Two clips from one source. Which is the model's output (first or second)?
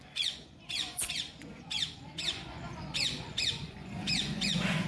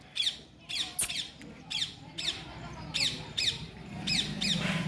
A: first